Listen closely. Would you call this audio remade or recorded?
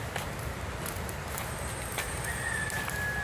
recorded